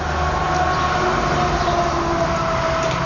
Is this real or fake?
real